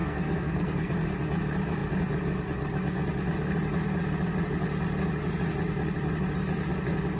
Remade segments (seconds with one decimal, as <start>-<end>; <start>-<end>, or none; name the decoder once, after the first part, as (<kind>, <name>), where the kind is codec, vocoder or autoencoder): 0.0-0.9 (codec, SNAC)